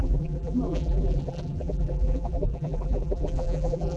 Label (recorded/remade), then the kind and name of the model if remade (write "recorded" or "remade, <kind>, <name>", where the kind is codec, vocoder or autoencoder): remade, vocoder, BigVGAN v2